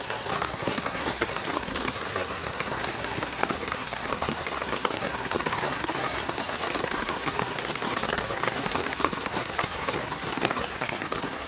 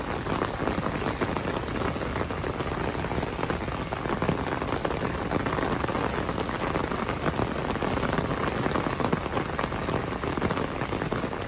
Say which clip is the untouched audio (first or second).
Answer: second